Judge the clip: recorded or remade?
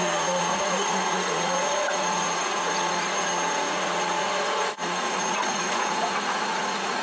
remade